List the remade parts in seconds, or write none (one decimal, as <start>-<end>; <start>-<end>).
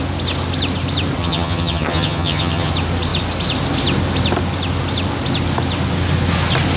1.2-2.7